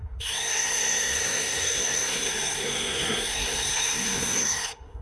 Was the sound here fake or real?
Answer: fake